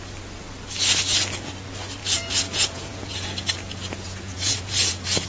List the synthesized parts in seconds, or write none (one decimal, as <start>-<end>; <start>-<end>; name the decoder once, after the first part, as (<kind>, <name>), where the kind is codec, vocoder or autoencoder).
2.0-5.3 (vocoder, Vocos)